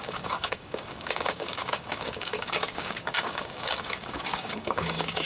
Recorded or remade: remade